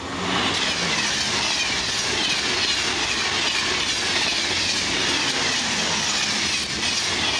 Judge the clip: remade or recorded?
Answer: recorded